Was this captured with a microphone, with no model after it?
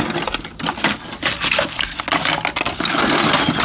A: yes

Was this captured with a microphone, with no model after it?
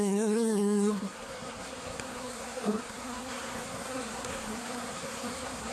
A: no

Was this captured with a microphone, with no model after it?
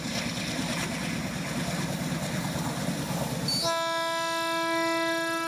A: yes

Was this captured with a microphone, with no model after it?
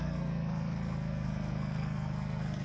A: no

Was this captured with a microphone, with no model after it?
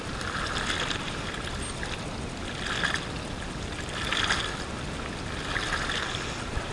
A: yes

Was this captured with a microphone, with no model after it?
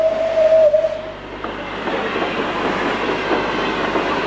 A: yes